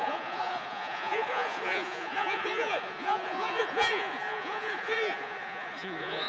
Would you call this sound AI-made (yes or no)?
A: yes